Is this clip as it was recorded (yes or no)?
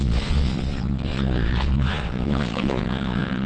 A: no